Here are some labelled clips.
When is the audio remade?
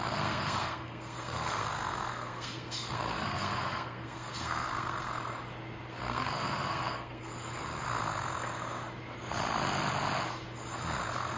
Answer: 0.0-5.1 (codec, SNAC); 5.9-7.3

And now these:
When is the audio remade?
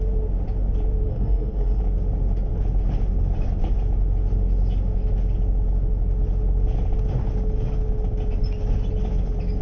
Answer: 1.1-1.8 (codec, SNAC)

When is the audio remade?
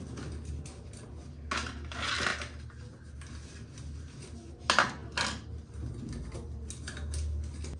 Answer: none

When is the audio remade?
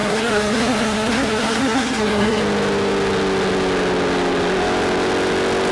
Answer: 0.0-2.4 (codec, SNAC)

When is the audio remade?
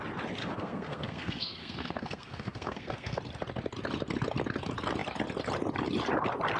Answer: 0.4-3.2 (codec, SNAC)